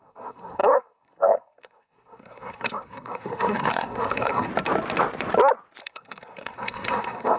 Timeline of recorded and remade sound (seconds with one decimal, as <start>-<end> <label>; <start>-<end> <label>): 0.0-4.5 remade; 4.5-5.8 recorded; 5.8-7.4 remade